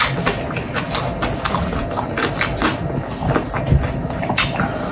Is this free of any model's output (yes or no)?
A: yes